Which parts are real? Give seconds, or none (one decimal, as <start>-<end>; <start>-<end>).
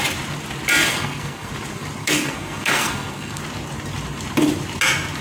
0.0-0.9; 1.5-2.0; 3.4-5.2